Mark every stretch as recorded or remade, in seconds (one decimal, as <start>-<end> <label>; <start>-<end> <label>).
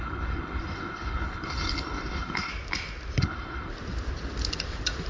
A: 0.0-2.5 remade; 2.5-3.2 recorded; 3.2-3.7 remade; 3.7-5.1 recorded